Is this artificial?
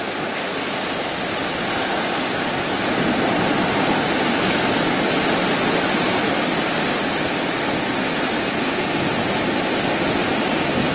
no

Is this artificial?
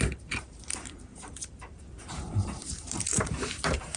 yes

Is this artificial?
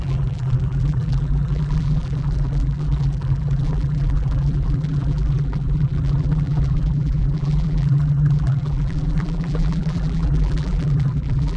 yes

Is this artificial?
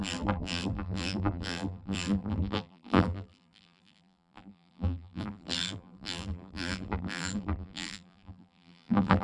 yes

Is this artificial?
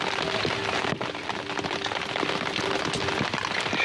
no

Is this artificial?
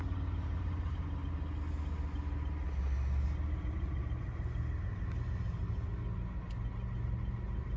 no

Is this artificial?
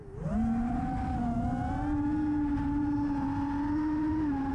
no